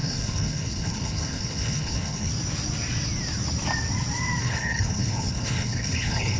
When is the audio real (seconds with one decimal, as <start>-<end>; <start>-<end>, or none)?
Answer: 2.3-4.4